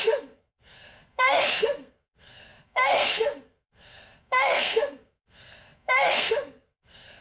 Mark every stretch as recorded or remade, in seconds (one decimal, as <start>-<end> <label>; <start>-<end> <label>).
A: 0.0-7.2 remade